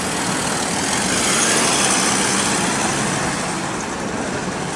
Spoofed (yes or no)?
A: no